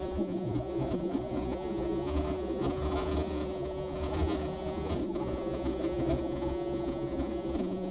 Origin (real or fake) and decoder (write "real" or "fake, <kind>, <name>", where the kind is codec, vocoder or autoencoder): fake, vocoder, Vocos